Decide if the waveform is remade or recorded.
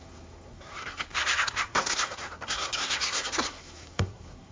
remade